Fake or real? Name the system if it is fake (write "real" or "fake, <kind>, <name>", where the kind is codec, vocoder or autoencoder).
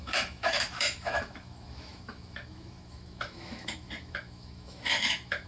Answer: fake, autoencoder, DAC-VAE